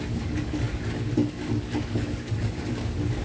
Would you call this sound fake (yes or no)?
yes